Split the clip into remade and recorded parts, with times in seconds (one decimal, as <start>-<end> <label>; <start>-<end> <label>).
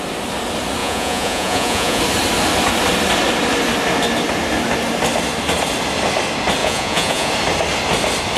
0.0-0.8 recorded; 0.8-2.0 remade; 2.0-6.6 recorded; 6.6-7.3 remade; 7.3-8.4 recorded